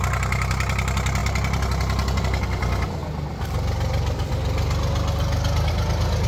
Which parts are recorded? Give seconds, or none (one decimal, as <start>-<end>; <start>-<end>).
0.0-6.3